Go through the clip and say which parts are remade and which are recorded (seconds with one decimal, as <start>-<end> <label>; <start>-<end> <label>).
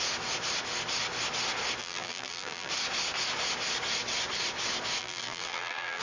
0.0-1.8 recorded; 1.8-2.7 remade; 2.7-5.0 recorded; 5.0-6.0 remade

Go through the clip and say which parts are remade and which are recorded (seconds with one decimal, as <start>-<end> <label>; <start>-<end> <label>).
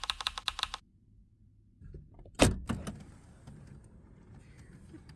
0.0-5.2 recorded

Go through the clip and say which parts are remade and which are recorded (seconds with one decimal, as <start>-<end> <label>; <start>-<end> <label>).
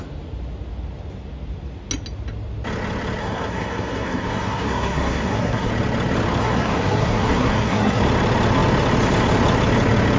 0.0-3.2 recorded; 3.2-5.7 remade; 5.7-6.4 recorded; 6.4-8.0 remade; 8.0-10.2 recorded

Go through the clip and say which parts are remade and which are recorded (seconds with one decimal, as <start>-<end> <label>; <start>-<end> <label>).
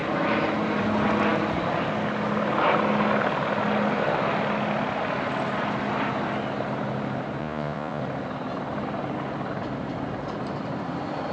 0.0-7.4 recorded; 7.4-8.0 remade; 8.0-11.3 recorded